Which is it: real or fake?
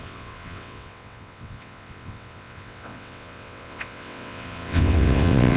fake